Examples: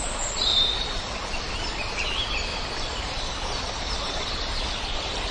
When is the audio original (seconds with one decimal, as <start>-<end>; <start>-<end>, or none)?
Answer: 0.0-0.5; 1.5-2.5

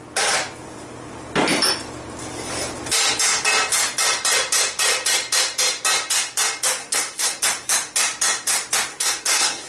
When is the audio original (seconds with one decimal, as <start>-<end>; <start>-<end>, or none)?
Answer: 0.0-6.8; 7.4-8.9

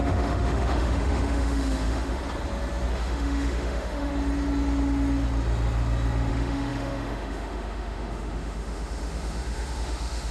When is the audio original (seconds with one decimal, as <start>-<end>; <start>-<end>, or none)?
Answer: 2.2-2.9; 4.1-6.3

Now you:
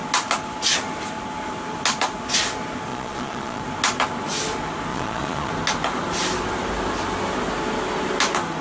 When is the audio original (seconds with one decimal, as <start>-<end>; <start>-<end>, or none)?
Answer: 0.0-2.9; 3.6-4.9; 5.5-8.6